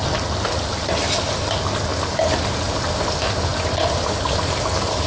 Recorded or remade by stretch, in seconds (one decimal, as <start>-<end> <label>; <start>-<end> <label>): 0.0-5.1 recorded

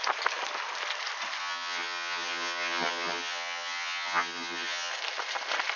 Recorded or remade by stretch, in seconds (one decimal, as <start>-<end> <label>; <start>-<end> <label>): 0.0-1.4 recorded; 1.4-4.9 remade; 4.9-5.8 recorded